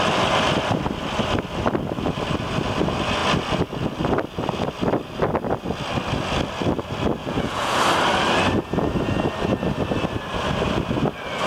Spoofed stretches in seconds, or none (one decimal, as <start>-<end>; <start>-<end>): 7.2-7.8